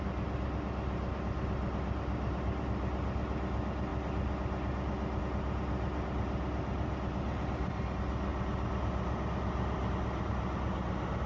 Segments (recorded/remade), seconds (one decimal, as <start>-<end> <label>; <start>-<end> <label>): 0.0-11.3 recorded